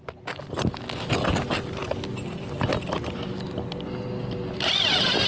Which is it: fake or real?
real